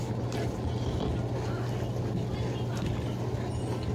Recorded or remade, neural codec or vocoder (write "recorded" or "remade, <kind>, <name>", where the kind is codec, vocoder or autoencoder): recorded